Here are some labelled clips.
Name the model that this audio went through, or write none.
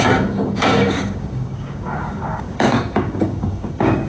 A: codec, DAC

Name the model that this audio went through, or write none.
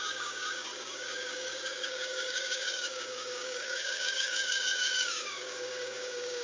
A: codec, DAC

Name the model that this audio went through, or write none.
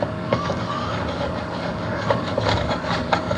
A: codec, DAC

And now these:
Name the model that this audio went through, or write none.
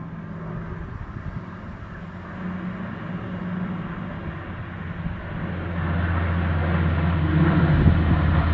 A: none